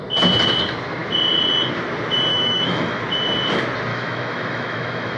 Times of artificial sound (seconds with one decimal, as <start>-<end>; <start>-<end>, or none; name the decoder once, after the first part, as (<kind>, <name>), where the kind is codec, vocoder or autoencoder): 2.3-3.0 (autoencoder, DAC-VAE); 3.9-5.2